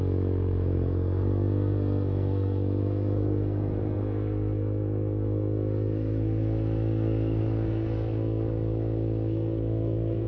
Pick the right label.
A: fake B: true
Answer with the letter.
A